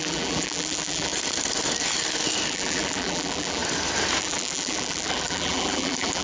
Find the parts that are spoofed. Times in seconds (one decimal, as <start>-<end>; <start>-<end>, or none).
0.0-1.1; 2.5-3.6; 4.2-6.2